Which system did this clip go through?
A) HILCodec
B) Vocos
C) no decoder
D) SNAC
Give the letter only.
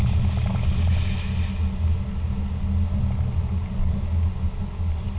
C